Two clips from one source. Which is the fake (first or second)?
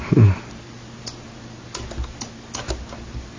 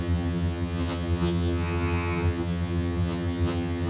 second